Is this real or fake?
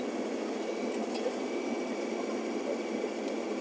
real